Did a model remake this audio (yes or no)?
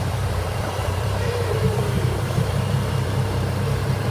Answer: yes